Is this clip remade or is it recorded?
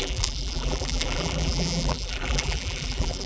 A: remade